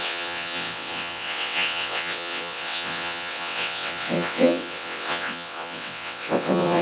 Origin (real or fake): fake